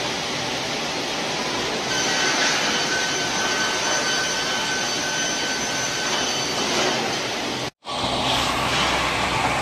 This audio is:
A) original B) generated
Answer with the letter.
A